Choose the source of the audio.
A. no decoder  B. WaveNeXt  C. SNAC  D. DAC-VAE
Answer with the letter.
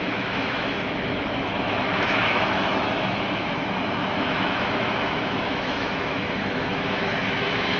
D